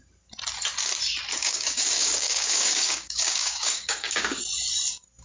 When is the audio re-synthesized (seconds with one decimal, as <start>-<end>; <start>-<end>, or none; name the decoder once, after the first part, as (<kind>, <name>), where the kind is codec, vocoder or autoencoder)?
1.3-4.4 (codec, DAC)